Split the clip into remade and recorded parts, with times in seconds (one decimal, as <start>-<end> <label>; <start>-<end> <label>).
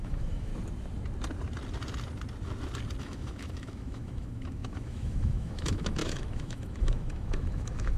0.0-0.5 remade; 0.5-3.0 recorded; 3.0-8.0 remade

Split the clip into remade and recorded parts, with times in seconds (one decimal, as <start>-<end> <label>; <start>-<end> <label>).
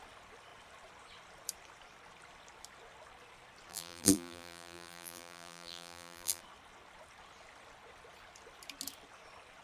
0.0-3.7 recorded; 3.7-6.4 remade; 6.4-9.6 recorded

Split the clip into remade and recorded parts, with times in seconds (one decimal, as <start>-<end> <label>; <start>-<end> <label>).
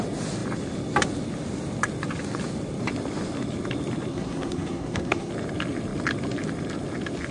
0.0-4.1 recorded; 4.1-5.3 remade; 5.3-7.3 recorded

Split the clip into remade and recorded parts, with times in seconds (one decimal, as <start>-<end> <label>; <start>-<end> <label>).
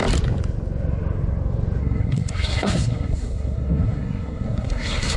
0.0-1.8 recorded; 1.8-5.2 remade